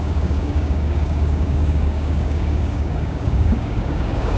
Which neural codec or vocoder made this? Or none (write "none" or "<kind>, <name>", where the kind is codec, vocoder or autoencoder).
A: codec, DAC